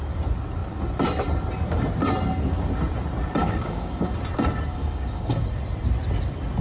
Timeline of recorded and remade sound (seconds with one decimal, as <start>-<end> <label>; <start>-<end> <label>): 0.0-3.4 recorded; 3.4-4.1 remade; 4.1-4.7 recorded; 4.7-5.5 remade; 5.5-6.6 recorded